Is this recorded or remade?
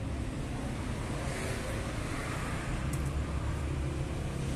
recorded